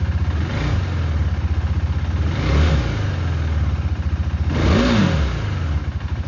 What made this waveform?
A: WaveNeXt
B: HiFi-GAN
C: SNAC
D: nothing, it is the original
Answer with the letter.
D